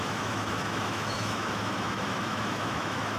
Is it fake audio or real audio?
fake